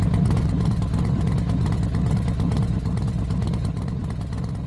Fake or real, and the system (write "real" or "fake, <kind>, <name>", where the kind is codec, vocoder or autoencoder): real